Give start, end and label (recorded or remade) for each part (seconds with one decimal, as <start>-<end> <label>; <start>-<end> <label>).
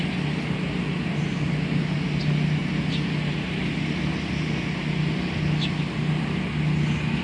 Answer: 0.0-7.2 recorded